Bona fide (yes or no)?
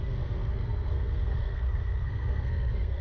no